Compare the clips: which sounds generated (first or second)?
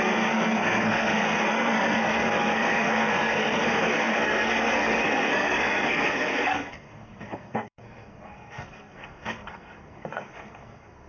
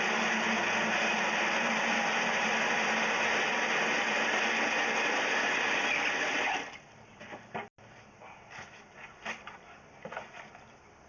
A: first